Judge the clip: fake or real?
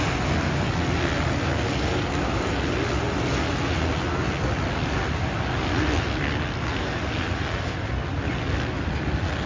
real